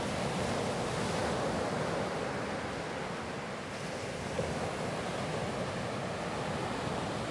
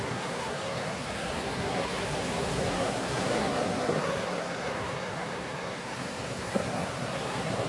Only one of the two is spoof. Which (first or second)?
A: second